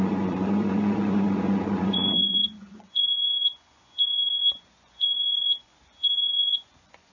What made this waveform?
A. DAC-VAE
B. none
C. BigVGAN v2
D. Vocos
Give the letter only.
D